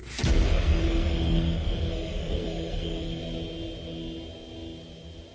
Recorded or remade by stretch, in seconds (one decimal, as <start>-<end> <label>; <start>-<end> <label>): 0.0-3.2 remade; 3.2-5.3 recorded